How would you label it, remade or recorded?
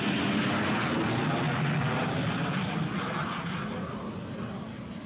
recorded